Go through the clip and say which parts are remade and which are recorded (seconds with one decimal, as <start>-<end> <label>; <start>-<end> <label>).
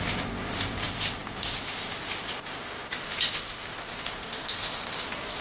0.0-4.2 recorded; 4.2-5.0 remade; 5.0-5.4 recorded